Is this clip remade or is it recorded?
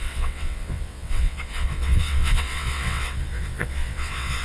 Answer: remade